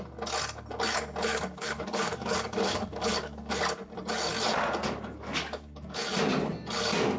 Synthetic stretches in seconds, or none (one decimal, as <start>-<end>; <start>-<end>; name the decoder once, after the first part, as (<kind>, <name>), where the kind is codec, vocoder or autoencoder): 1.3-3.5 (codec, DAC); 4.8-6.0

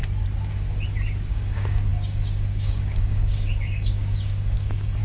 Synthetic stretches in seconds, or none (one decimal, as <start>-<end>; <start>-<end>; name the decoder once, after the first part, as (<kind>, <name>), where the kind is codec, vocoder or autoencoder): 1.3-5.0 (codec, DAC)

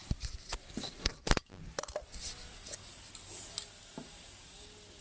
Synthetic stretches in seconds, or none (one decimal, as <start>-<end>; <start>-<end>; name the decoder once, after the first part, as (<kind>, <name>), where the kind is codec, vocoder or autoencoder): none

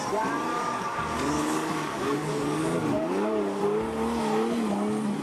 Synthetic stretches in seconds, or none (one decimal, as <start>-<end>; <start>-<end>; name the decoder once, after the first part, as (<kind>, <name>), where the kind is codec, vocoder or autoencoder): 0.5-3.6 (codec, DAC)

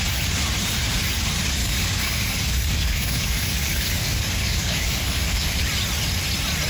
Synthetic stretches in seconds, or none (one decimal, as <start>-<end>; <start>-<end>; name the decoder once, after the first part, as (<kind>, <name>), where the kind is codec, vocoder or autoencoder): 1.6-5.6 (codec, DAC)

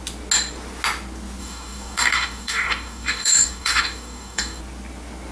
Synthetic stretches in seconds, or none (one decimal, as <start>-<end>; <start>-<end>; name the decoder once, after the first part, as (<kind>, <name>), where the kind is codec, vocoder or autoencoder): 1.4-4.6 (codec, DAC)

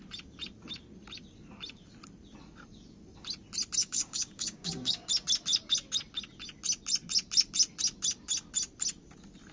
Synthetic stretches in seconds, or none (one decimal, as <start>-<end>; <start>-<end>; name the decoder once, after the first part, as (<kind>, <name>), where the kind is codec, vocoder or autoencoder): 3.8-5.1 (codec, DAC)